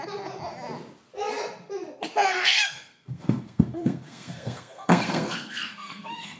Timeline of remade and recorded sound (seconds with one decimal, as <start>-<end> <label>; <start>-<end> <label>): 0.0-2.3 recorded; 2.3-6.4 remade